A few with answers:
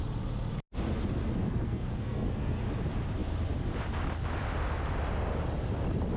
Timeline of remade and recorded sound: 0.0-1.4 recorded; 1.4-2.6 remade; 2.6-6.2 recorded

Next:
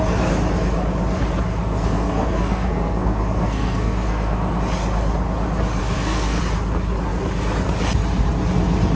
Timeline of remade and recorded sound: 0.0-1.5 recorded; 1.5-4.6 remade; 4.6-5.8 recorded; 5.8-6.4 remade; 6.4-9.0 recorded